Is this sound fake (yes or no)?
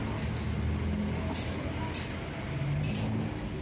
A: no